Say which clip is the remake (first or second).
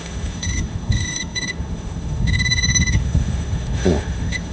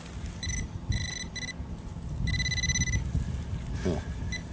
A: first